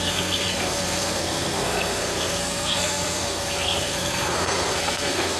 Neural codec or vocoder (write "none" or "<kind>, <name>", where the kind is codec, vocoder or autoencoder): codec, SNAC